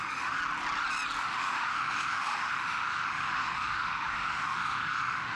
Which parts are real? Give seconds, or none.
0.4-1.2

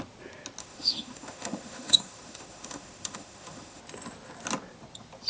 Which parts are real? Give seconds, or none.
0.0-0.6; 3.8-5.3

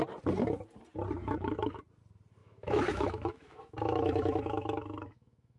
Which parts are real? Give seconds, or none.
0.0-1.2; 1.8-2.4

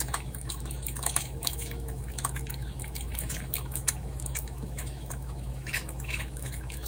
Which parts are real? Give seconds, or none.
none